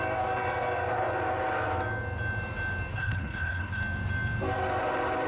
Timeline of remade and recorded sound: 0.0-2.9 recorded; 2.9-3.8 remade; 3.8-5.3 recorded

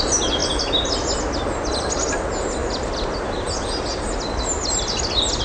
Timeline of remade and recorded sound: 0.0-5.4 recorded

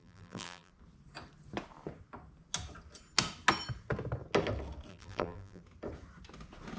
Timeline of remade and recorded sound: 0.0-0.7 remade; 0.7-4.9 recorded; 4.9-5.6 remade; 5.6-6.8 recorded

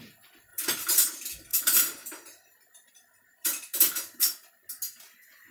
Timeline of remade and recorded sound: 0.0-0.5 recorded; 0.5-1.0 remade; 1.0-1.5 recorded; 1.5-2.9 remade; 2.9-3.4 recorded; 3.4-4.5 remade; 4.5-5.5 recorded

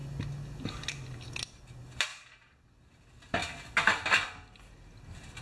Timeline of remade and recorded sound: 0.0-5.4 recorded

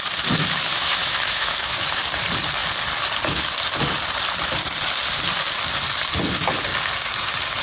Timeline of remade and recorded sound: 0.0-0.4 recorded; 0.4-2.0 remade; 2.0-7.6 recorded